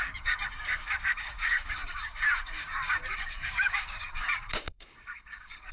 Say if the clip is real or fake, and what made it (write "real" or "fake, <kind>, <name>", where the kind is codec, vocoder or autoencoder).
fake, codec, DAC